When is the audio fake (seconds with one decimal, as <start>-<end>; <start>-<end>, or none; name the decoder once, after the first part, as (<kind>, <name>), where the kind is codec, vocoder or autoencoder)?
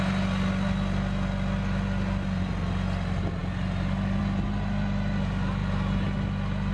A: none